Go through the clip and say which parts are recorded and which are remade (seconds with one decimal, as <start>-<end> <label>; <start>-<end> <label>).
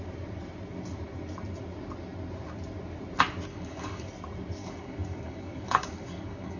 0.0-3.5 recorded; 3.5-4.1 remade; 4.1-4.6 recorded; 4.6-6.6 remade